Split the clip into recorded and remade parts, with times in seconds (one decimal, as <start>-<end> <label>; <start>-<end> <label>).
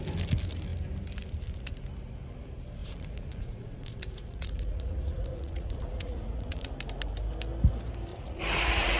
0.0-2.8 recorded; 2.8-6.7 remade; 6.7-8.1 recorded; 8.1-9.0 remade